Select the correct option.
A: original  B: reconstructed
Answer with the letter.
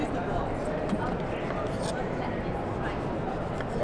A